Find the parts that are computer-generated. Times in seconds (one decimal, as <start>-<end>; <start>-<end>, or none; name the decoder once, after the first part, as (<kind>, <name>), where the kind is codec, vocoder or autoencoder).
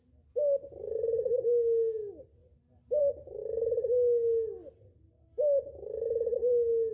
none